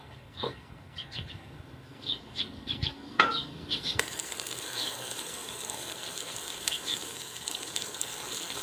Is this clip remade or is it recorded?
remade